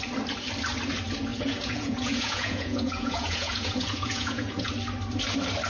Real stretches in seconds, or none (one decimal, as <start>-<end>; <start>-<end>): 0.0-1.3; 4.7-5.7